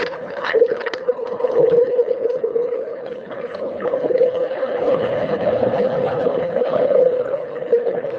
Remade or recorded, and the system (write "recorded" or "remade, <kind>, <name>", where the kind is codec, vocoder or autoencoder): remade, codec, HILCodec